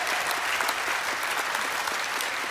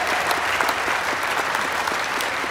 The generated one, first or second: second